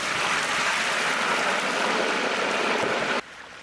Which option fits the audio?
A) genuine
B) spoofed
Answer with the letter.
A